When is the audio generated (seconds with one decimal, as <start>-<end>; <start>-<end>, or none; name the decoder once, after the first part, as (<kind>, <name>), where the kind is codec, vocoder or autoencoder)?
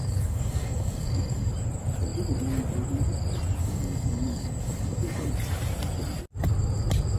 0.0-1.5 (codec, DAC); 3.6-5.3